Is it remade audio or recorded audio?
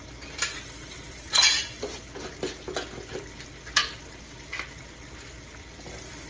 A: recorded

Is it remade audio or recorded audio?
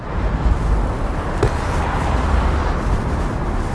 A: recorded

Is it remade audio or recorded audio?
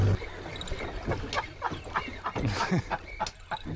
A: recorded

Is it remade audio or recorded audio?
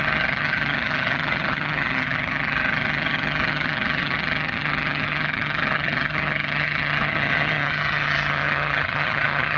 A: remade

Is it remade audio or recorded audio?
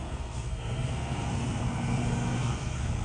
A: remade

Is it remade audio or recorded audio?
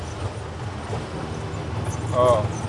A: recorded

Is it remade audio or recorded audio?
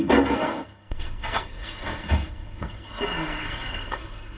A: remade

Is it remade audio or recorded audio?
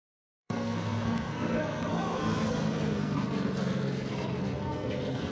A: remade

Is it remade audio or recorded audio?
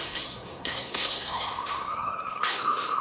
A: remade